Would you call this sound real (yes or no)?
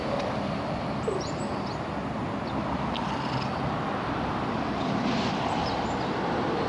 yes